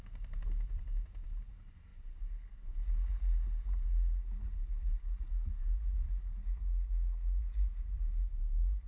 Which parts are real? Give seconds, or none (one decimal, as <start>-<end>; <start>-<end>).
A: 6.4-7.4